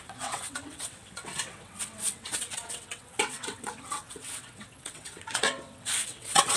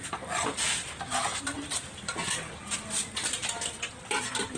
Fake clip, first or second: first